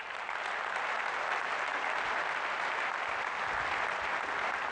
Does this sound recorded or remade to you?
recorded